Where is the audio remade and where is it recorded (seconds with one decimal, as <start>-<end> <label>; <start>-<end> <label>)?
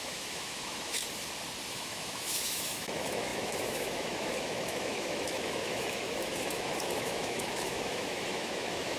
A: 0.0-1.0 remade; 1.0-1.7 recorded; 1.7-9.0 remade